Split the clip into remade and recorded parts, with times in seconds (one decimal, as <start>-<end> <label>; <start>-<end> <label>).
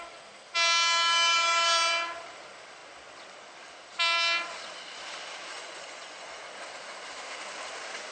0.0-5.5 recorded; 5.5-6.4 remade; 6.4-8.1 recorded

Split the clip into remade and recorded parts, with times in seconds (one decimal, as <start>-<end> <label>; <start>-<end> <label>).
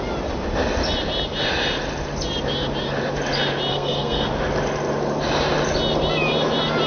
0.0-3.7 recorded; 3.7-4.3 remade; 4.3-6.9 recorded